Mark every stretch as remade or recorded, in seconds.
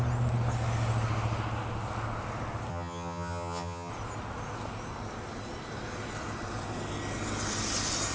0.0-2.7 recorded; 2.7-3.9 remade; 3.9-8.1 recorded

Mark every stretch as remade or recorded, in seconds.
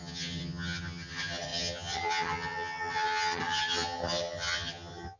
0.0-5.2 remade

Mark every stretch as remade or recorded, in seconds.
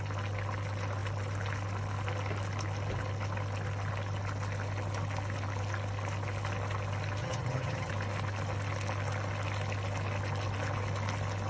0.0-7.2 recorded; 7.2-7.9 remade; 7.9-11.5 recorded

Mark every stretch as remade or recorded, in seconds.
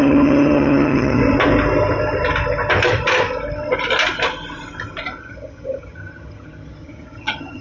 0.0-1.2 remade; 1.2-5.2 recorded; 5.2-7.6 remade